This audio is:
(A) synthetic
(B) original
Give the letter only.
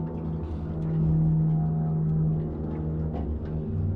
B